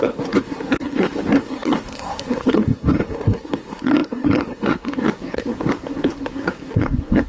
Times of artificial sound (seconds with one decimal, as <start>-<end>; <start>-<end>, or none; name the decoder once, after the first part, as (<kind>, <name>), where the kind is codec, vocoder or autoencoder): 0.0-7.3 (codec, SNAC)